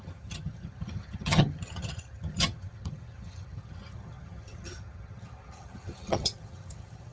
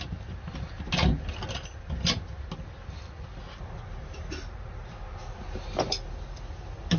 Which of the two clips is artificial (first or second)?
first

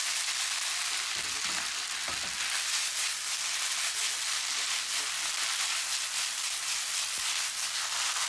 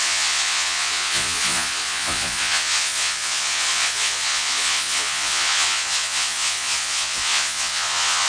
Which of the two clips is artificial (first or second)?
second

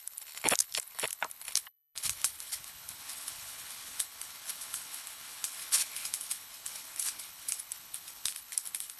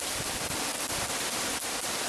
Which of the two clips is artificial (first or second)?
first